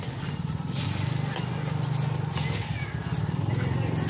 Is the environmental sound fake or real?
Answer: real